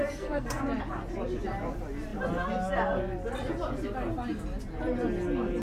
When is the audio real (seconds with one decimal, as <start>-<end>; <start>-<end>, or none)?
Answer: 0.6-5.6

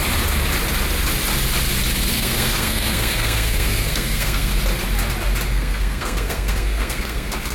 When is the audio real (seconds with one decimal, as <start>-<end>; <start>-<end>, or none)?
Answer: 0.0-2.1; 4.5-5.5